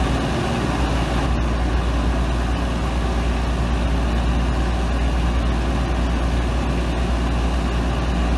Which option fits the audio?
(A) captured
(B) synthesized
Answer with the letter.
A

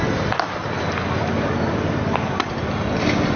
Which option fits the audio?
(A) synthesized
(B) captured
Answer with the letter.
B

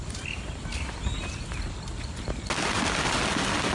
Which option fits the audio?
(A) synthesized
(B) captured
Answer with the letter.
B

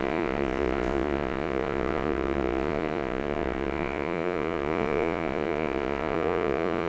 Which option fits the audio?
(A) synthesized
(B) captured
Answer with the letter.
A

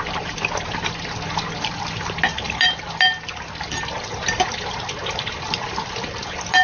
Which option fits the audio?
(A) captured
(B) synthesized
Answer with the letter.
A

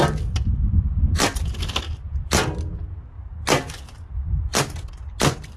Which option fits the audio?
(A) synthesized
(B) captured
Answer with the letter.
B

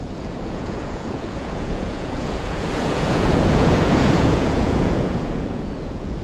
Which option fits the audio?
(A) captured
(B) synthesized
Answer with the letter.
B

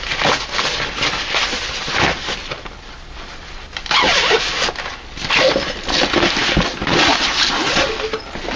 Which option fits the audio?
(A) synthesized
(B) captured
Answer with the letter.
B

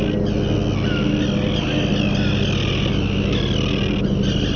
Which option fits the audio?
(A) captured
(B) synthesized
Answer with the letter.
A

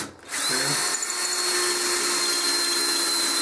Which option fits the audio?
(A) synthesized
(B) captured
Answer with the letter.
B